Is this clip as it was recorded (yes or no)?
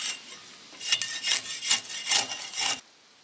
yes